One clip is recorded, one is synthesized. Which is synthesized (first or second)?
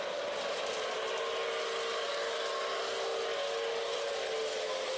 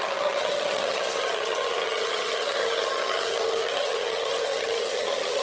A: second